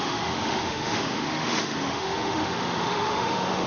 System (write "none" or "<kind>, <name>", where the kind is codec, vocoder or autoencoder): autoencoder, DAC-VAE